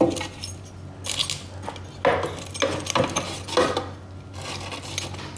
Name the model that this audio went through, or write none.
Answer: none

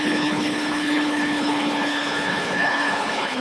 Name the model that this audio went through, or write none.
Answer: codec, HILCodec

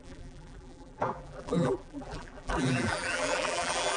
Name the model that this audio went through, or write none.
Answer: vocoder, BigVGAN v2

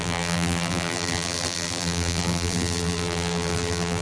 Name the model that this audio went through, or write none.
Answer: vocoder, BigVGAN v2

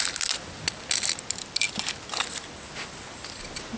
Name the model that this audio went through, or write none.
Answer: none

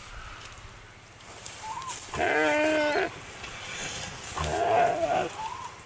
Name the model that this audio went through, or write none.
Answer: none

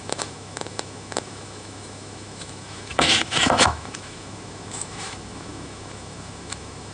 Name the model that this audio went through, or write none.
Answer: autoencoder, DAC-VAE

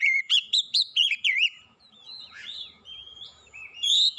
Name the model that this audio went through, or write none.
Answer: vocoder, Vocos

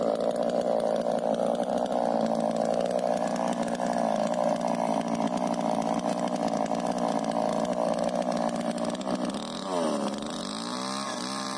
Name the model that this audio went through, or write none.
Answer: none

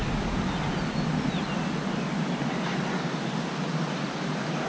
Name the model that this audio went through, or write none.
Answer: none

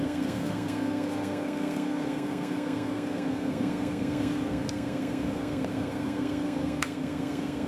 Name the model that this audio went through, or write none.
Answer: codec, SNAC